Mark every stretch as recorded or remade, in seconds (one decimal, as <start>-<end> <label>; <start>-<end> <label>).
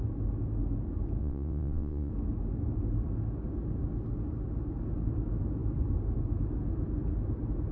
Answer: 0.0-1.2 recorded; 1.2-2.1 remade; 2.1-7.7 recorded